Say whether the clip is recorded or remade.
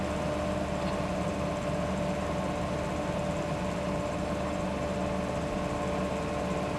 recorded